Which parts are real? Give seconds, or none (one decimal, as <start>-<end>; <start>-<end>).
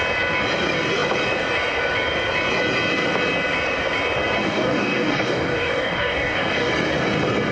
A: 0.0-4.4; 6.7-7.5